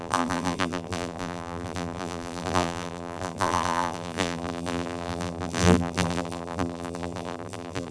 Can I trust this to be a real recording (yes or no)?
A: no